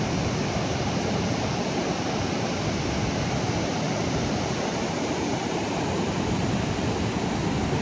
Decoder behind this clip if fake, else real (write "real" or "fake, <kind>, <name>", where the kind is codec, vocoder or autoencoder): real